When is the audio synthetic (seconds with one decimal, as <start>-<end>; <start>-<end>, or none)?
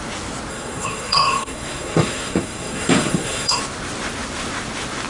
0.5-3.6